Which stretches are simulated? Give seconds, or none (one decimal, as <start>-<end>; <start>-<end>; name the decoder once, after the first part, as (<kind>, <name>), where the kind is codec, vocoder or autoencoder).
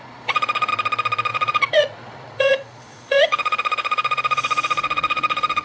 0.0-0.7 (vocoder, Vocos); 1.3-5.6